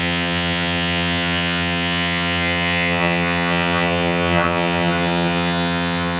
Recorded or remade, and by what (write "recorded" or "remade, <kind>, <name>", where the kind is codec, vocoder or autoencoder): remade, vocoder, HiFi-GAN